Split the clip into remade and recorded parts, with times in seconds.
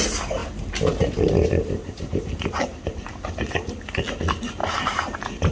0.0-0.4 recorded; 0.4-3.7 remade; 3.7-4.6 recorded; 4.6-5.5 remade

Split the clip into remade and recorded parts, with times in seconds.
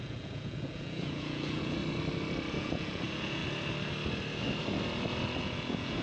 0.0-1.8 remade; 1.8-2.5 recorded; 2.5-3.4 remade; 3.4-5.4 recorded; 5.4-6.0 remade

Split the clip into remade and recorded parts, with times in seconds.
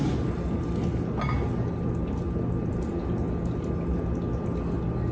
0.0-5.1 recorded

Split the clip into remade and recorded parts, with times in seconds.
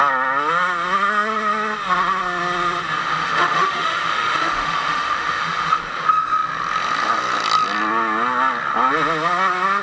0.0-3.0 recorded; 3.0-5.8 remade; 5.8-9.8 recorded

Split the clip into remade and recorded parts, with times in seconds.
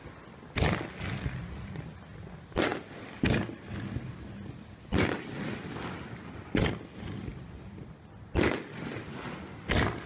0.0-10.1 recorded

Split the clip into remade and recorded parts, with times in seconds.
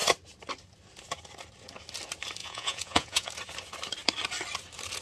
0.0-2.4 recorded; 2.4-3.3 remade; 3.3-5.0 recorded